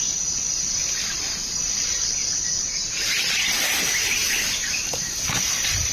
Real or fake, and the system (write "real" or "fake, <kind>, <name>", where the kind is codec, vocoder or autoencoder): real